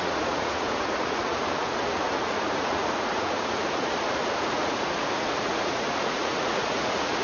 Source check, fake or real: fake